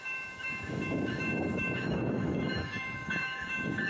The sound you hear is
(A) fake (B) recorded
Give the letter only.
A